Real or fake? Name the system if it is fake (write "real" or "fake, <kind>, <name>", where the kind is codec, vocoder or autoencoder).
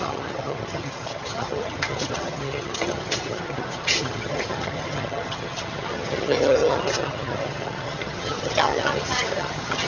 fake, vocoder, HiFi-GAN